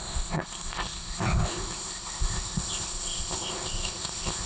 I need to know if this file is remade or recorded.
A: remade